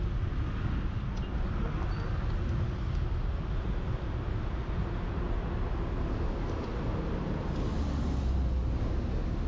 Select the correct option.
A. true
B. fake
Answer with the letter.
A